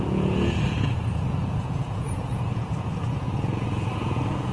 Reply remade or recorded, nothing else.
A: remade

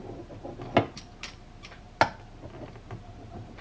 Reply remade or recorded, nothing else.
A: recorded